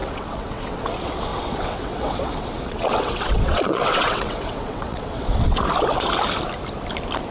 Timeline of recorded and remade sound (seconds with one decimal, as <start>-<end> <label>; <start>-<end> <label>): 0.0-0.9 remade; 0.9-1.3 recorded; 1.3-5.6 remade; 5.6-7.3 recorded